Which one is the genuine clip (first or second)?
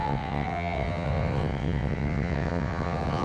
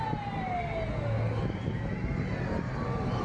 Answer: second